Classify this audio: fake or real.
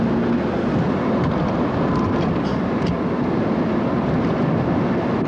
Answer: real